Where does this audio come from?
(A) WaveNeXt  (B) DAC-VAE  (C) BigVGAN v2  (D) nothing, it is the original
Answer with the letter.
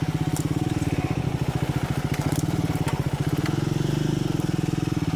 D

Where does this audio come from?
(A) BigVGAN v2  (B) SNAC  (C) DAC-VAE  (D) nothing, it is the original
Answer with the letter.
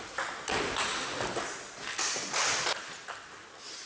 D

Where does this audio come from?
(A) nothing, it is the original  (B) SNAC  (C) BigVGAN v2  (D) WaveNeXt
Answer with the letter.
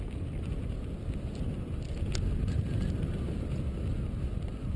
A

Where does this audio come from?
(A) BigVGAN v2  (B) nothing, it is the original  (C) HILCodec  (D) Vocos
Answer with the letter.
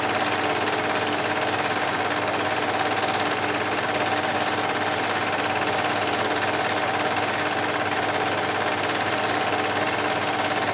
B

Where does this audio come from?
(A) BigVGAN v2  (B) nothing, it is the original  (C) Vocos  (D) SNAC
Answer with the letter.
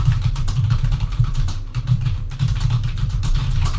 A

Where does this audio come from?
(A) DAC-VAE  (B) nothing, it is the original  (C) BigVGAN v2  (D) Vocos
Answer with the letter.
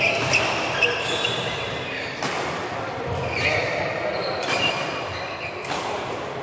C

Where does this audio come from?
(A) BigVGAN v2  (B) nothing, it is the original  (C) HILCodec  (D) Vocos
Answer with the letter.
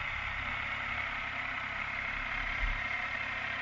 B